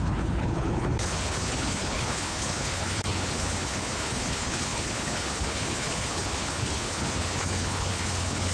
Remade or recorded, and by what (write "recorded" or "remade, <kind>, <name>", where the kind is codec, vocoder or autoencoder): remade, codec, HILCodec